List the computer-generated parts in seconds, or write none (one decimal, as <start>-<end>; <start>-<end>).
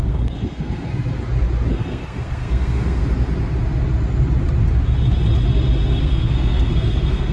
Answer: 0.0-0.9; 1.7-3.0; 6.0-7.3